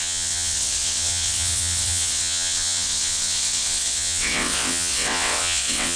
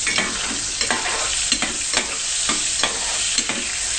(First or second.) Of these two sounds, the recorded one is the second